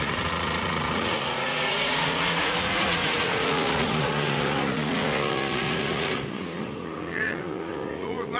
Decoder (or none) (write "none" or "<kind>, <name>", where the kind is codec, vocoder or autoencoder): vocoder, Vocos